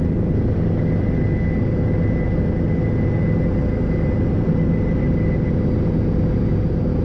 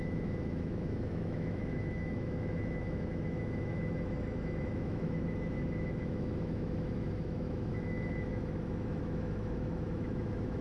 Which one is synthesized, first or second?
second